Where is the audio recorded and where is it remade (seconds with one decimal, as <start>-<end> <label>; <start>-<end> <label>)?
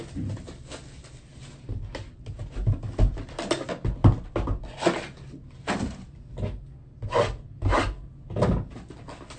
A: 0.0-9.4 recorded